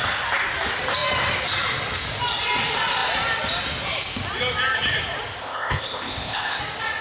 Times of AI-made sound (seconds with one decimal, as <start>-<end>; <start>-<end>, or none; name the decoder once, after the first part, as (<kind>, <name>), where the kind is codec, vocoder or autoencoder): 5.4-6.6 (codec, ZipCodec)